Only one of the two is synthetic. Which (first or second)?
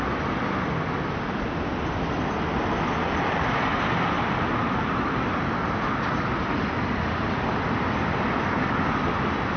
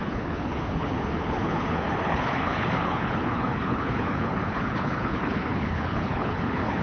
second